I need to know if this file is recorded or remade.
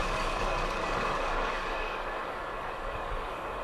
remade